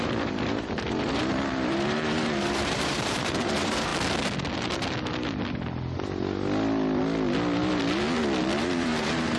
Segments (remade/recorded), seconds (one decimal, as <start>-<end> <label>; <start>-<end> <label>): 0.0-3.9 remade; 3.9-8.6 recorded; 8.6-9.4 remade